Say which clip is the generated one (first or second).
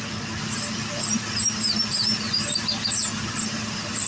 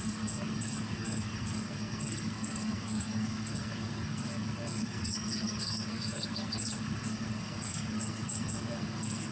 second